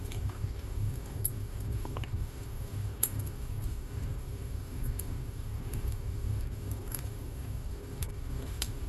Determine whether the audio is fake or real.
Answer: fake